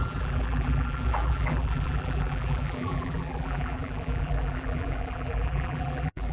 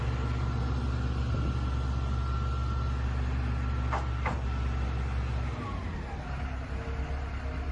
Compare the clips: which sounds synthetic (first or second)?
first